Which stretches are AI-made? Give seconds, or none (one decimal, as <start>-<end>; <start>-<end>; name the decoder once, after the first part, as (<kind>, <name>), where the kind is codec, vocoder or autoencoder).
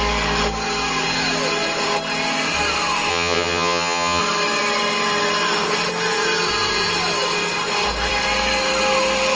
3.1-4.2 (vocoder, HiFi-GAN)